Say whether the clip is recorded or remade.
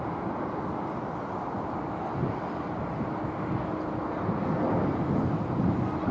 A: recorded